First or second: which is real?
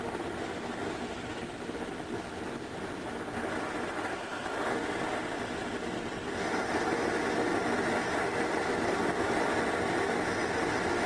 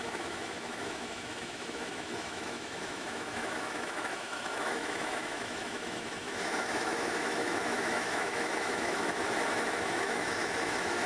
first